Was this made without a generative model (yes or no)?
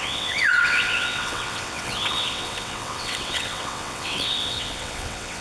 no